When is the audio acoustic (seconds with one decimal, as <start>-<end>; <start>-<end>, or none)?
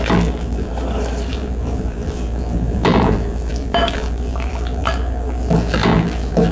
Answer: 0.7-1.3